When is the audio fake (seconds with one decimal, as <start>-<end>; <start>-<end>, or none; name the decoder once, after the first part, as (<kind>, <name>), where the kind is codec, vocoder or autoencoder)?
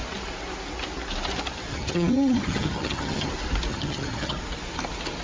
1.7-3.3 (vocoder, HiFi-GAN); 3.7-4.4